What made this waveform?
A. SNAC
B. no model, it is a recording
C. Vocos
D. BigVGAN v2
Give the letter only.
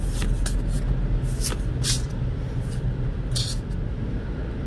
B